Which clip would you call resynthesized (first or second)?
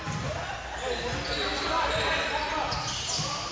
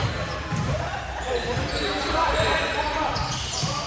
second